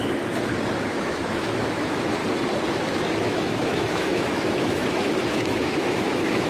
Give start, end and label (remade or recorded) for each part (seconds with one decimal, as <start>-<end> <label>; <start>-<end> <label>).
0.0-0.9 recorded; 0.9-2.2 remade; 2.2-2.7 recorded; 2.7-6.5 remade